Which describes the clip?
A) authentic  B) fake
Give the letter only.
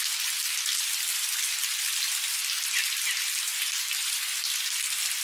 A